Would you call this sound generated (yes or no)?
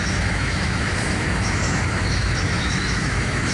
yes